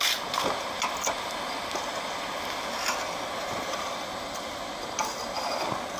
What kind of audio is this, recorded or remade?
recorded